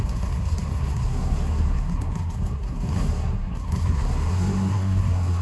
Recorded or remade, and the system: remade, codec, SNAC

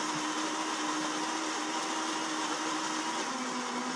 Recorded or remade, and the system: recorded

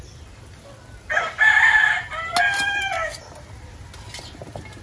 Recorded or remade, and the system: recorded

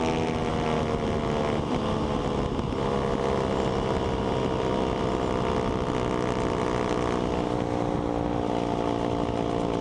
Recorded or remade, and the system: recorded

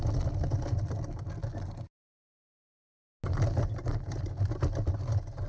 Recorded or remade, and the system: recorded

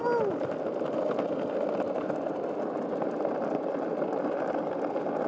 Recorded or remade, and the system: recorded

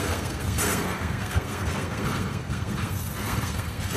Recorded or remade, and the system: remade, codec, SNAC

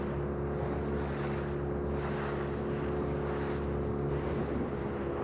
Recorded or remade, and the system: recorded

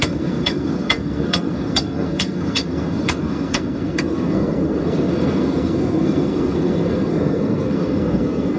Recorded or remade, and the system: remade, codec, SNAC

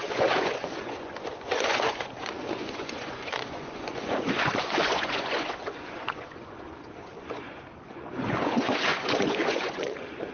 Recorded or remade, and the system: remade, vocoder, Vocos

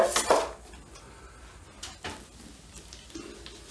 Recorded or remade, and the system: recorded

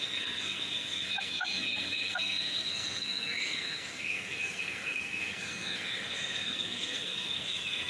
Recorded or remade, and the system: remade, codec, SNAC